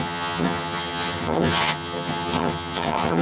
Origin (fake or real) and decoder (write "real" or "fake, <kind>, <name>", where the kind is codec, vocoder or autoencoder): fake, vocoder, HiFi-GAN